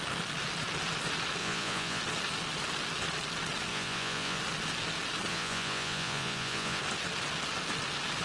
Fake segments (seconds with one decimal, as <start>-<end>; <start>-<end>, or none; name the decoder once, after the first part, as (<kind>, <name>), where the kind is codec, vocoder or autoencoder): 1.4-2.0 (vocoder, Vocos); 3.7-4.4; 5.3-6.8